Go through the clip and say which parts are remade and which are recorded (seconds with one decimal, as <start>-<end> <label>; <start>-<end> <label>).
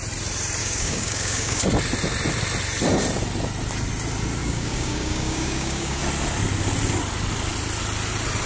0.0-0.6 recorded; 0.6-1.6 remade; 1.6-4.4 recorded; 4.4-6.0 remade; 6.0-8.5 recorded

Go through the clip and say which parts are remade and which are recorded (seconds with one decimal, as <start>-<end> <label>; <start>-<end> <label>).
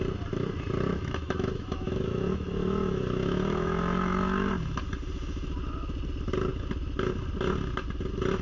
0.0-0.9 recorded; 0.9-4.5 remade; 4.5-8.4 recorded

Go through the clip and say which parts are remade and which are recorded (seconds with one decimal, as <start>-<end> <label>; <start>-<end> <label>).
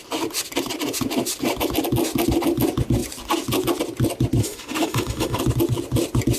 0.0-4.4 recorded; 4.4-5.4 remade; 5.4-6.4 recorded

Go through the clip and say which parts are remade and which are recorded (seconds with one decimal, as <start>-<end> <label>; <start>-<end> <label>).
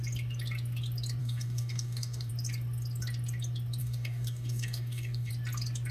0.0-1.2 recorded; 1.2-2.3 remade; 2.3-3.8 recorded; 3.8-5.3 remade; 5.3-5.9 recorded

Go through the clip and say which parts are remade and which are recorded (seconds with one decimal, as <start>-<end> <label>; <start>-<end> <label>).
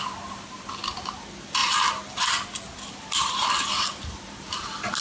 0.0-5.0 recorded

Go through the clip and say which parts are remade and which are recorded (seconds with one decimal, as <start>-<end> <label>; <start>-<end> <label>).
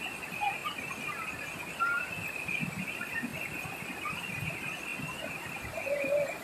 0.0-6.4 recorded